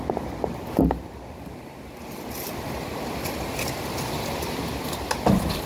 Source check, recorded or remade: recorded